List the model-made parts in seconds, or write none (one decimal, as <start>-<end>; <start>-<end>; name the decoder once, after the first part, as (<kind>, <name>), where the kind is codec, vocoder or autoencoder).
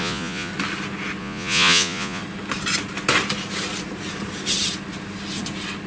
0.0-0.5 (vocoder, Vocos); 1.2-2.2